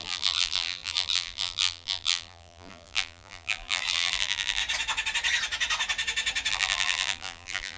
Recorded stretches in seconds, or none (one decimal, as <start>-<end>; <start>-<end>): 4.6-6.5